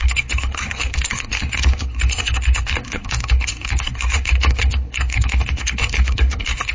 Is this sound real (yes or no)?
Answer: no